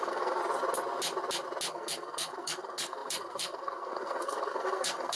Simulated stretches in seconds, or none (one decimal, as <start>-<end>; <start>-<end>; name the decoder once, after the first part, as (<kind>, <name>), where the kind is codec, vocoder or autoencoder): 0.0-0.4 (codec, SNAC); 1.7-5.2